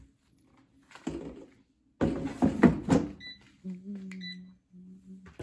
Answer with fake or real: real